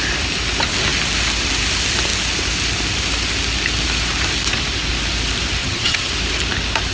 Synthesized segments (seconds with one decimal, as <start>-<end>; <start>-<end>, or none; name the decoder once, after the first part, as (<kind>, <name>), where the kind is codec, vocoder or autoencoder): 5.6-6.1 (vocoder, HiFi-GAN)